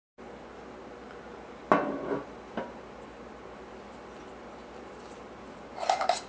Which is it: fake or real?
real